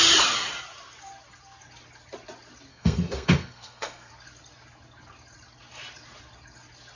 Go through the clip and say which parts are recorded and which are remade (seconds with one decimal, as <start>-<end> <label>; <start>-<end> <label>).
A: 0.0-2.7 recorded; 2.7-4.1 remade; 4.1-7.0 recorded